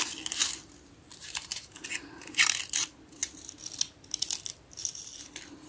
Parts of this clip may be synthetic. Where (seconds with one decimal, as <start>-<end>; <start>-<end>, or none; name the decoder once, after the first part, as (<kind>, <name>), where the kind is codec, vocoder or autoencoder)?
1.1-2.6 (vocoder, BigVGAN v2)